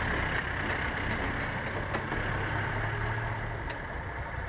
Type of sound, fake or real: real